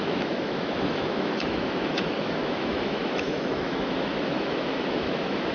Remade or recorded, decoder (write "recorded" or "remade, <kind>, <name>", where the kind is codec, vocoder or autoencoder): remade, autoencoder, DAC-VAE